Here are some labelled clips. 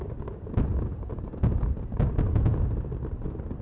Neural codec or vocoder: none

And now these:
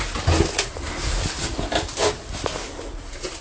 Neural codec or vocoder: none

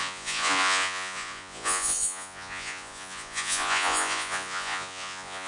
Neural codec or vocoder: vocoder, Vocos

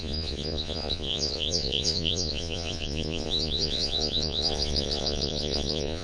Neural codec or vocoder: vocoder, Vocos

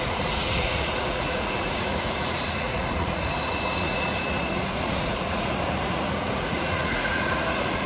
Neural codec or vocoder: vocoder, Vocos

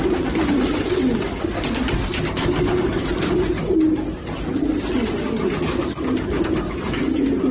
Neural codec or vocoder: none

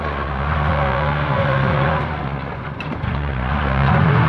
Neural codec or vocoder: vocoder, Vocos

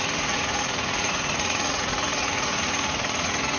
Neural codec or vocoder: vocoder, Vocos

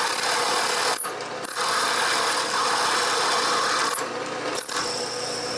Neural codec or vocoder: none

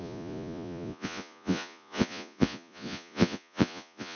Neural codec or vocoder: vocoder, Vocos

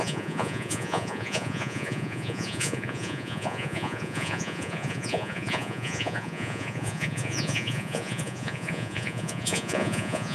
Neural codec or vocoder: vocoder, Vocos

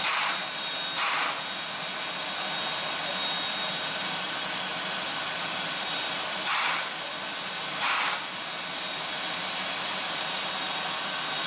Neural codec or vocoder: none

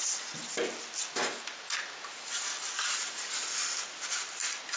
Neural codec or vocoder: none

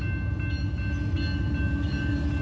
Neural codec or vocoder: none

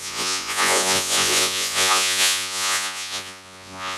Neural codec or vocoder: vocoder, Vocos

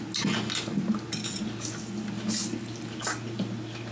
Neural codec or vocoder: none